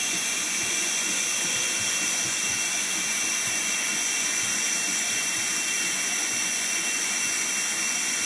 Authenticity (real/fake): fake